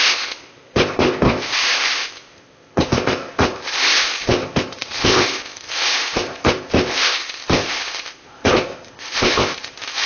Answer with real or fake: fake